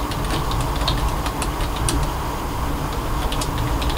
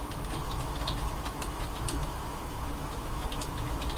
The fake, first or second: second